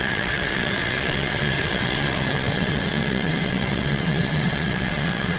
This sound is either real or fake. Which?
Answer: fake